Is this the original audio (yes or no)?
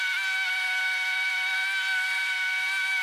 no